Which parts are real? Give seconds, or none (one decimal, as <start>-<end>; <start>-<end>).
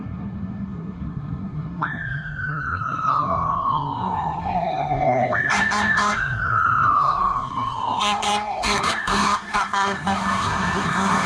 none